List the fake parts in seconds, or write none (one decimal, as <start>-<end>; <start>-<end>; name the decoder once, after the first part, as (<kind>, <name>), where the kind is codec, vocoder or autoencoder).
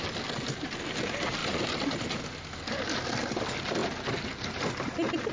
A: none